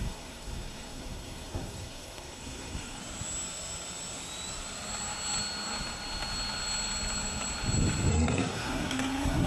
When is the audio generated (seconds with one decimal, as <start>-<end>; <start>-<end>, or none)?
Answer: 0.0-3.0; 8.1-9.5